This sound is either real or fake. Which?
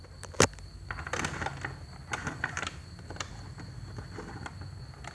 real